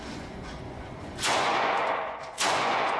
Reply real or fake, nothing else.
fake